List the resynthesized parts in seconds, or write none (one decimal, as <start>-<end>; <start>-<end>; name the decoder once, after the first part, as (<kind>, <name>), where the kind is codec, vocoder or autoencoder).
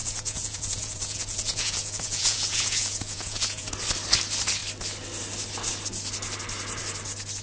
0.0-3.7 (vocoder, Vocos)